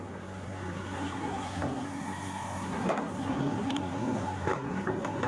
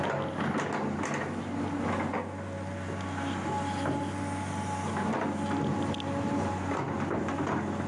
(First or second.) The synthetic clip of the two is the first